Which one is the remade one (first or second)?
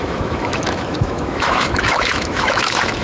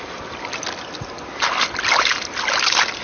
first